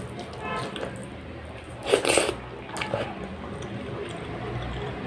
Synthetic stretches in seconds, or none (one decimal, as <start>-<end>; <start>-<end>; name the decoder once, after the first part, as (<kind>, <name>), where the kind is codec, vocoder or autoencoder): 1.0-2.3 (vocoder, BigVGAN v2)